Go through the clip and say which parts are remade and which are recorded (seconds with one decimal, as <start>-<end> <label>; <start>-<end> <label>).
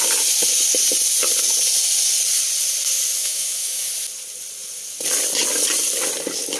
0.0-3.2 recorded; 3.2-3.9 remade; 3.9-6.6 recorded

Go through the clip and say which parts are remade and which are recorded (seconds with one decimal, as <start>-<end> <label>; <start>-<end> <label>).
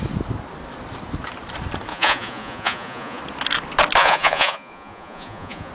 0.0-1.9 recorded; 1.9-3.2 remade; 3.2-4.0 recorded; 4.0-5.7 remade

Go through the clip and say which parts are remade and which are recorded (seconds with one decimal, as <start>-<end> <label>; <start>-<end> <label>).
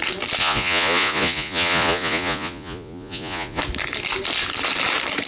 0.0-0.4 recorded; 0.4-3.6 remade; 3.6-5.3 recorded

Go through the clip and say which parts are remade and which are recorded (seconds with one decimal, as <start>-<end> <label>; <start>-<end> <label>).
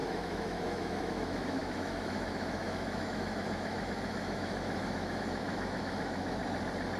0.0-6.4 remade; 6.4-7.0 recorded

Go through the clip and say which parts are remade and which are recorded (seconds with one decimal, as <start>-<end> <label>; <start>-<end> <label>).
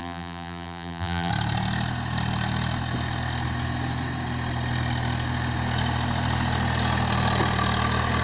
0.0-1.3 remade; 1.3-8.2 recorded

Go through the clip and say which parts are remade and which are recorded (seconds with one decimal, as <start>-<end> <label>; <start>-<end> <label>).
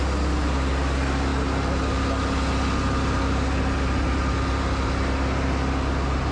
0.0-6.3 recorded